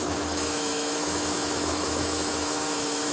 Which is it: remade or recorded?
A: remade